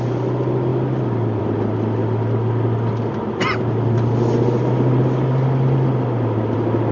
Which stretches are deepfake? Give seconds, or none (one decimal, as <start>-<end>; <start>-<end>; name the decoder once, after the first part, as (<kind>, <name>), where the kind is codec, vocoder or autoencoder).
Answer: none